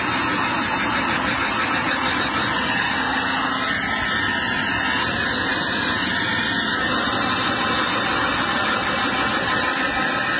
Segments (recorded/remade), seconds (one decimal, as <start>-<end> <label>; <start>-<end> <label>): 0.0-10.4 recorded